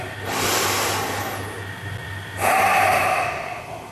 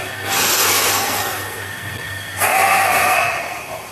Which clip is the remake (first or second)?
second